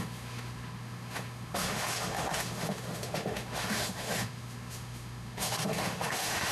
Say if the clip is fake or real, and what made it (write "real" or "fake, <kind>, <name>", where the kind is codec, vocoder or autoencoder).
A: fake, autoencoder, DAC-VAE